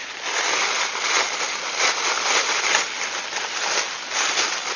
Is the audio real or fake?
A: real